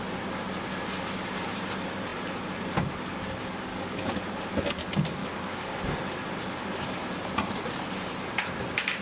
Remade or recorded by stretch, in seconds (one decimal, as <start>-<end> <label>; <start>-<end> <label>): 0.0-3.7 recorded; 3.7-4.2 remade; 4.2-5.2 recorded; 5.2-5.8 remade; 5.8-9.0 recorded